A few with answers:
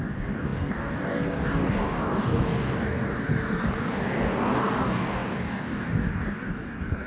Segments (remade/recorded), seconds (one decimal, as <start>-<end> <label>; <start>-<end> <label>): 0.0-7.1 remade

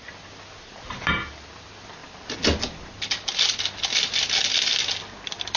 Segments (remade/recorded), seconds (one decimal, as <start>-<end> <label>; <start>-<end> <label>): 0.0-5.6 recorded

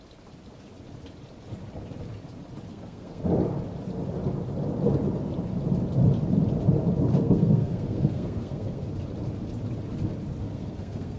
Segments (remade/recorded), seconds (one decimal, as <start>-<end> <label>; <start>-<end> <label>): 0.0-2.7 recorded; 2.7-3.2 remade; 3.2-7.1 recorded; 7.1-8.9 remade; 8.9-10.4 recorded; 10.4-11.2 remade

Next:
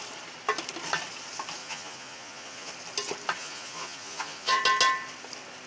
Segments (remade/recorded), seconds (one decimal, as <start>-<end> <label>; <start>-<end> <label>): 0.0-1.6 recorded; 1.6-2.7 remade; 2.7-3.4 recorded; 3.4-4.6 remade; 4.6-5.7 recorded

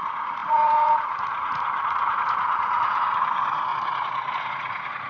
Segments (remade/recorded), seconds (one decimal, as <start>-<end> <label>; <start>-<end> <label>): 0.0-5.1 remade